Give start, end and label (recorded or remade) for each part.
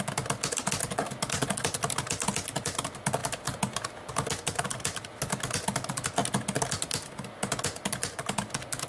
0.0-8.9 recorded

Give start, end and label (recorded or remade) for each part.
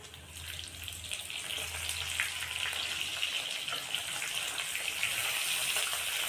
0.0-6.3 recorded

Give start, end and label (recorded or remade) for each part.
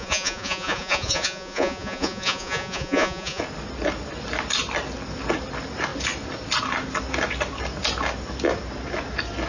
0.0-3.4 remade; 3.4-9.5 recorded